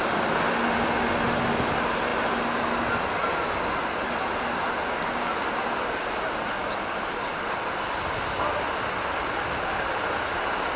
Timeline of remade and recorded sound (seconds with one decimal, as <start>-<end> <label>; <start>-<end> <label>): 0.0-10.8 recorded

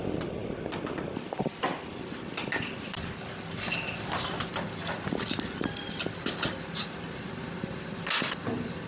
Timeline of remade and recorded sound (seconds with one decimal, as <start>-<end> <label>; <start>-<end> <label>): 0.0-8.9 recorded

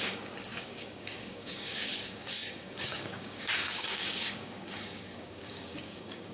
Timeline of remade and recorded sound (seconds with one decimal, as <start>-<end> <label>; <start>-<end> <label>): 0.0-6.3 remade